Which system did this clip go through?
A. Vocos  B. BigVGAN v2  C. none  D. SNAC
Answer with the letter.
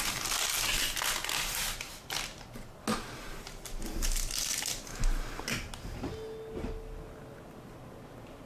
C